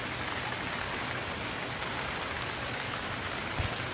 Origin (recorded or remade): recorded